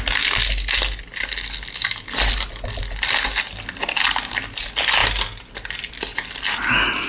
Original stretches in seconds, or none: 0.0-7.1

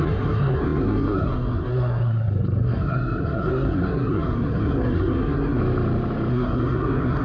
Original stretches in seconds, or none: 5.6-6.3

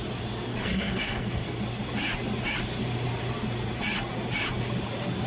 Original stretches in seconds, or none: 0.0-0.5; 1.6-5.3

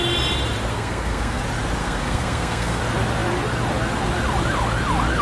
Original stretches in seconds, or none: 0.0-0.7; 1.4-1.8; 2.8-5.2

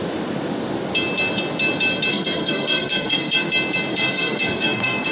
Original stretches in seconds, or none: 0.0-2.1; 3.5-3.9

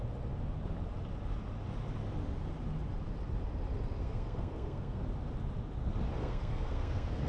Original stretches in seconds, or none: 0.0-4.0; 5.0-6.2